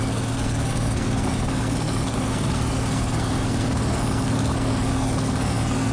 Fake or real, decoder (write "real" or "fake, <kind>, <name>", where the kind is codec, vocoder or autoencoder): fake, codec, SNAC